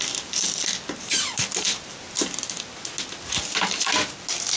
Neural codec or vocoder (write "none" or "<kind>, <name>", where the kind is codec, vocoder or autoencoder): none